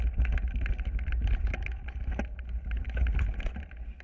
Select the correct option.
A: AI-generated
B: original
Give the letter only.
B